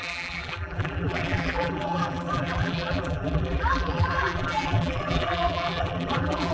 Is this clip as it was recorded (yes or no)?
no